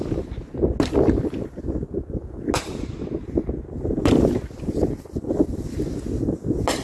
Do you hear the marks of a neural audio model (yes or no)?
no